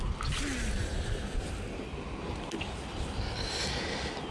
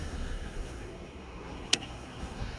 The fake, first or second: second